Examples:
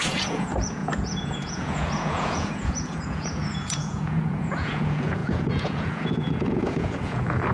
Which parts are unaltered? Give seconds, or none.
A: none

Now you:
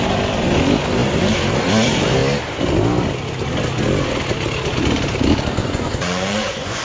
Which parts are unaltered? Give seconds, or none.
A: 0.0-5.6

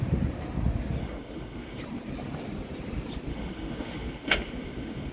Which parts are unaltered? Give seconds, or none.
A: 0.0-1.0; 1.8-3.3